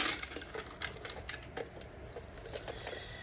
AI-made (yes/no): no